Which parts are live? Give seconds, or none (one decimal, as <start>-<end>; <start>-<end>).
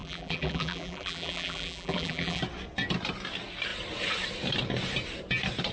2.4-5.7